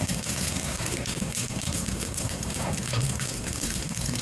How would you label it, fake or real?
fake